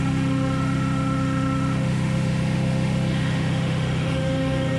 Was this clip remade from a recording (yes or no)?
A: yes